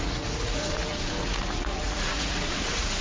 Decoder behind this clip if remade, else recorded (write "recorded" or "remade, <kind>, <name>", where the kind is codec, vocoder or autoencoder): remade, vocoder, Vocos